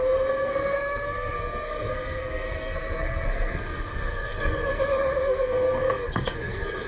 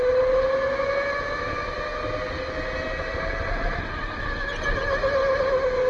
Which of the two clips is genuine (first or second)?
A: second